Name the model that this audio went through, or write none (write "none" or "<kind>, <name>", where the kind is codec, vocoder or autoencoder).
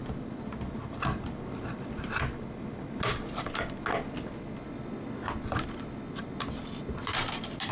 none